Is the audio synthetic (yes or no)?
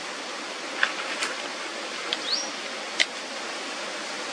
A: no